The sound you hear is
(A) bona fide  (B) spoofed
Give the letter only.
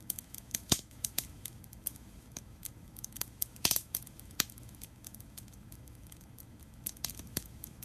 B